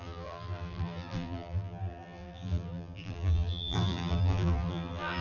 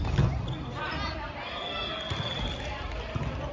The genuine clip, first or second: second